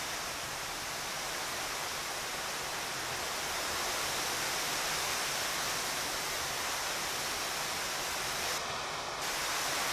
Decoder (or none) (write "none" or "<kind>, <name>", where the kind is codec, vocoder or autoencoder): none